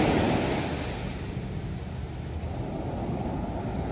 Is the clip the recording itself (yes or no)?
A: yes